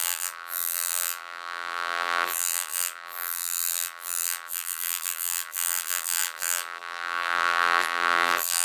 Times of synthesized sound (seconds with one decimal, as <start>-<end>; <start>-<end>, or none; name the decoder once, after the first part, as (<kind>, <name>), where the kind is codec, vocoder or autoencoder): 0.0-8.6 (vocoder, BigVGAN v2)